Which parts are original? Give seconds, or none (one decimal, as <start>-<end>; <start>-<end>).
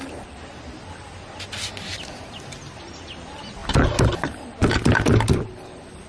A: 0.0-6.1